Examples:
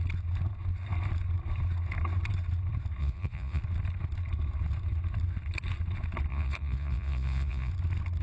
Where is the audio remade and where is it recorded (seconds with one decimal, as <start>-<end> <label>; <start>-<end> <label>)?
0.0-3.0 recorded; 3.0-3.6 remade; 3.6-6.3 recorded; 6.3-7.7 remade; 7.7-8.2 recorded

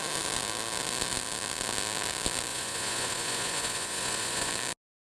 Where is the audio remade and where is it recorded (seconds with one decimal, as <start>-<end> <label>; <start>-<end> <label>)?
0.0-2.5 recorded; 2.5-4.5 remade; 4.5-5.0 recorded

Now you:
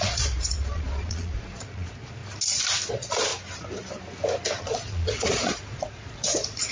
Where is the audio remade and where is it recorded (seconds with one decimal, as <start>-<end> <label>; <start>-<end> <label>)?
0.0-2.2 remade; 2.2-2.9 recorded; 2.9-3.3 remade; 3.3-4.6 recorded; 4.6-6.7 remade